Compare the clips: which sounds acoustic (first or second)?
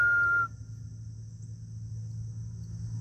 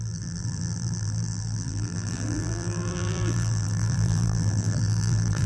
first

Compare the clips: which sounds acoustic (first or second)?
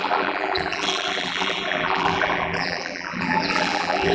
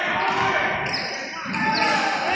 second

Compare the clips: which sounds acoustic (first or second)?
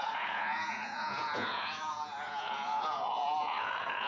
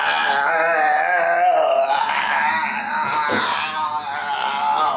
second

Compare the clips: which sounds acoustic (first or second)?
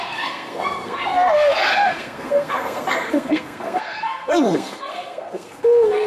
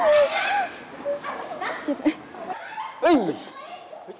second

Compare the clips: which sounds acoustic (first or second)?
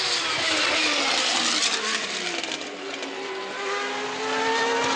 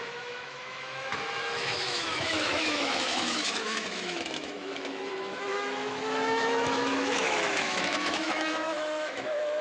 first